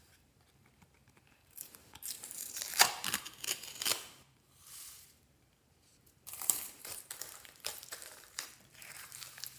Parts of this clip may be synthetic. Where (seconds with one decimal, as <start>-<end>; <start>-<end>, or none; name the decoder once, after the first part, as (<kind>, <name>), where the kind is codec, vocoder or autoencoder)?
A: 0.0-9.6 (vocoder, BigVGAN v2)